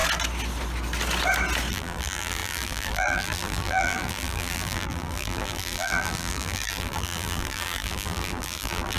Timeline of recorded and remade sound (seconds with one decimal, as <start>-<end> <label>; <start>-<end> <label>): 0.0-1.7 recorded; 1.7-9.0 remade